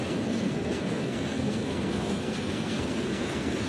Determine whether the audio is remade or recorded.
remade